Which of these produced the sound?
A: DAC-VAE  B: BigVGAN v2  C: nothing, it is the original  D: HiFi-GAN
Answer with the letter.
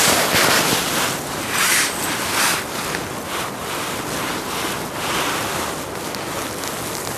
C